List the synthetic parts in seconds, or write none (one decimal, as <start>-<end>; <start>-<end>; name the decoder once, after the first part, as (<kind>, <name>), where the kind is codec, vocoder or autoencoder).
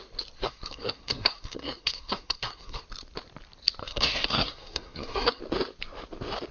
0.4-2.8 (codec, SNAC); 3.8-5.4